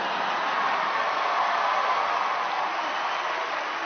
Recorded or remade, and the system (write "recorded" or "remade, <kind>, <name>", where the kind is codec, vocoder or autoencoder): recorded